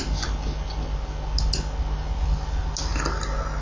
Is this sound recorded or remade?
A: recorded